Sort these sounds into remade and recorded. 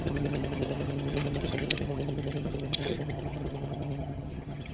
remade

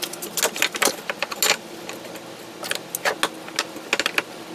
recorded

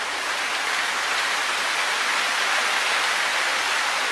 recorded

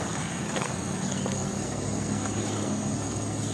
remade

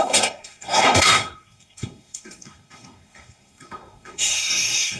remade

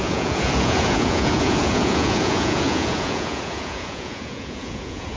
remade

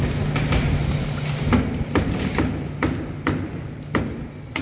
recorded